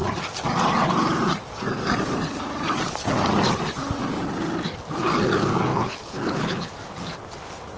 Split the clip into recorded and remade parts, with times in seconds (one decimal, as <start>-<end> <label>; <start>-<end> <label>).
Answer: 0.0-5.7 recorded; 5.7-6.7 remade; 6.7-7.8 recorded